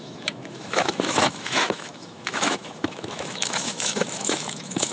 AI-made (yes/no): yes